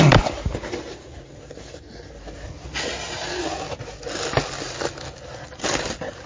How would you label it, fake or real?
real